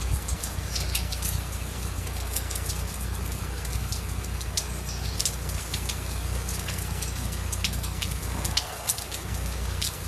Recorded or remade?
remade